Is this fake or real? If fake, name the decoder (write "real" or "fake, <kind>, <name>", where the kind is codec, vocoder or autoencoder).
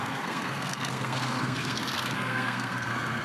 fake, codec, SNAC